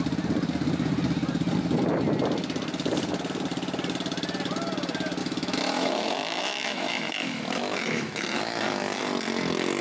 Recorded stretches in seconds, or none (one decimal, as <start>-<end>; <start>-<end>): 0.0-5.2; 9.0-9.8